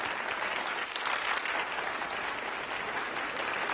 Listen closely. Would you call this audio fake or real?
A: real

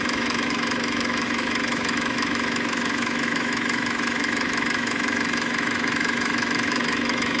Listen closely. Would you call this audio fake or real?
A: fake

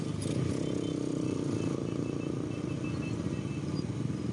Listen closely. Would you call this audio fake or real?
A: real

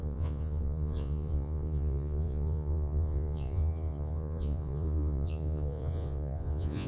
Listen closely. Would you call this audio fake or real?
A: fake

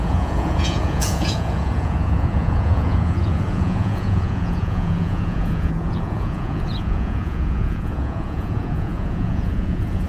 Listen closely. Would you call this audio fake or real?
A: fake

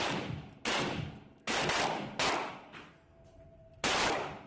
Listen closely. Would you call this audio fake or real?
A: real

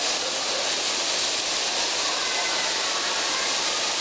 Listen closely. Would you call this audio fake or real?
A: real